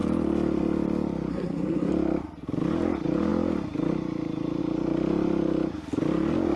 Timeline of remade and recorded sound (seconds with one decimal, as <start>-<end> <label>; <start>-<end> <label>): 0.0-1.3 recorded; 1.3-1.9 remade; 1.9-6.6 recorded